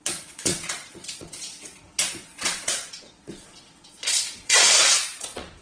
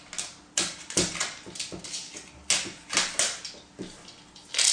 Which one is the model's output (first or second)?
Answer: first